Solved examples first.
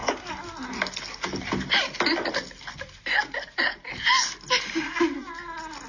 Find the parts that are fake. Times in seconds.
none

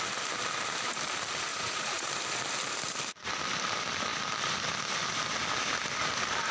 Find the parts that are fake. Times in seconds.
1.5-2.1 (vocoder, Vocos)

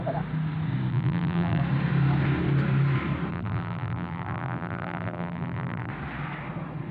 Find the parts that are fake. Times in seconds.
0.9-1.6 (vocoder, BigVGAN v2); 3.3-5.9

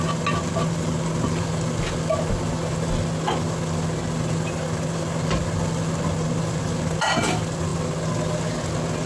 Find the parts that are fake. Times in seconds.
none

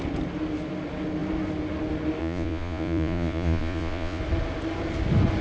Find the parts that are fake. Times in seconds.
2.2-4.2 (vocoder, Vocos)

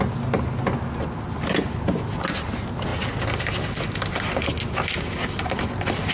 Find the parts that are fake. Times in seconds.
none